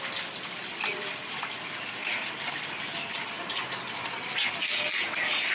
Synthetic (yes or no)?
no